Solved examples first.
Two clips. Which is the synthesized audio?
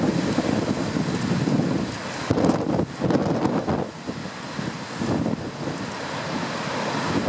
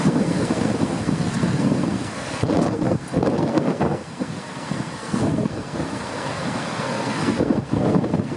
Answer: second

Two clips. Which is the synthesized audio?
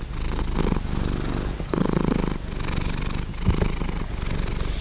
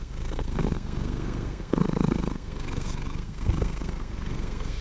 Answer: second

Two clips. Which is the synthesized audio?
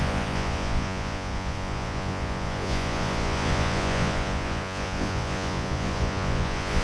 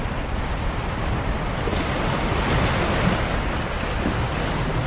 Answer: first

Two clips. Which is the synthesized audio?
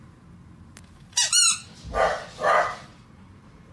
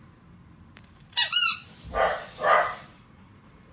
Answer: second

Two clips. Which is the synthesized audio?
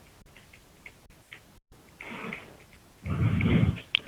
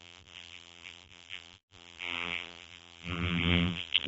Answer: second